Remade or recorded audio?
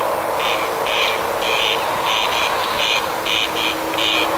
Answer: recorded